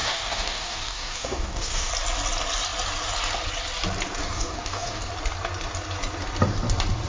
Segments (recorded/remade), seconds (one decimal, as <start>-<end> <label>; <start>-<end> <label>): 0.0-1.9 remade; 1.9-4.2 recorded; 4.2-5.1 remade; 5.1-7.1 recorded